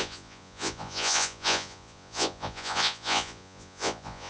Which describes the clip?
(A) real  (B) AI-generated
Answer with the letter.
B